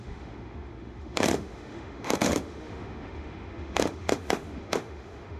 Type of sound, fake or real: fake